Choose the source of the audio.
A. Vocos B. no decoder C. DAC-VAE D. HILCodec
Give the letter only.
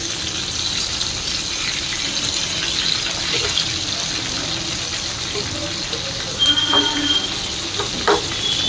B